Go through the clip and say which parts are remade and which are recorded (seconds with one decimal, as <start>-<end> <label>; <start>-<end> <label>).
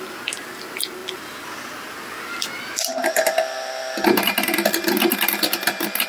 0.0-6.1 recorded